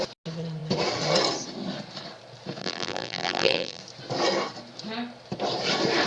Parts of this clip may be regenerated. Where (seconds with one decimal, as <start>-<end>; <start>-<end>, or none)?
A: 2.6-3.8